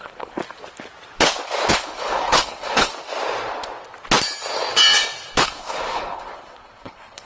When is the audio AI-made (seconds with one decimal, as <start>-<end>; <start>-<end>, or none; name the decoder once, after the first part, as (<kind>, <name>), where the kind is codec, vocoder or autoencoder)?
0.0-0.4 (codec, HILCodec); 1.7-2.9; 5.4-7.3